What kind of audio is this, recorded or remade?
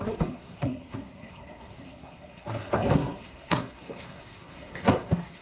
remade